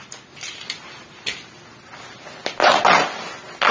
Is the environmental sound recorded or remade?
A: recorded